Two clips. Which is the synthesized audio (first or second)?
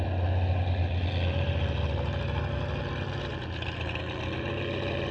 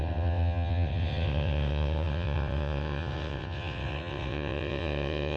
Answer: second